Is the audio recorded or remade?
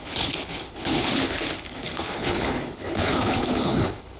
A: remade